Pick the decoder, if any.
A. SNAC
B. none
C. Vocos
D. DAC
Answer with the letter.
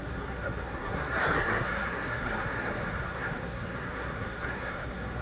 A